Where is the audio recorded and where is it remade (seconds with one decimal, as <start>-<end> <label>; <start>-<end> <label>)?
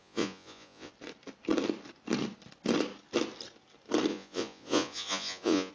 0.0-0.9 remade; 0.9-4.1 recorded; 4.1-5.7 remade